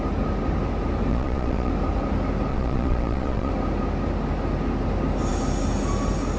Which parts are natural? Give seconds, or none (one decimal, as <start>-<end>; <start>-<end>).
0.0-1.1; 1.7-2.5; 3.5-6.4